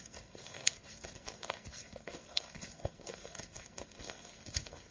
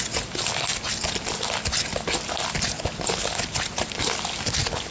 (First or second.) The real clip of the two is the second